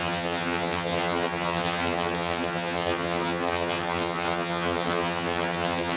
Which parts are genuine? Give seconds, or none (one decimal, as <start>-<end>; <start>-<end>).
none